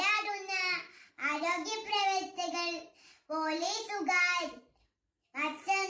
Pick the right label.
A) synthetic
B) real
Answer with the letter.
B